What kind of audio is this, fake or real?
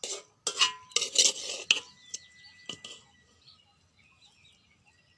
real